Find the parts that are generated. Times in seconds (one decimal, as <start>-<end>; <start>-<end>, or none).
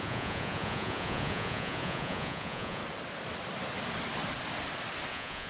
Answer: 0.0-2.8; 5.1-5.5